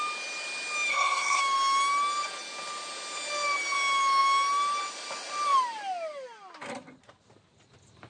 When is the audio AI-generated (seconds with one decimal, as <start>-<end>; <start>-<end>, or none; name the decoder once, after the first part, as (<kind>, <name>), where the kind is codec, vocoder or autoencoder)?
0.9-1.4 (codec, SNAC)